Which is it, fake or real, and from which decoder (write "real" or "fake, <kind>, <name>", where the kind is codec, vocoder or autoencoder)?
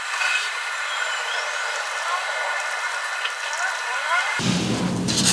real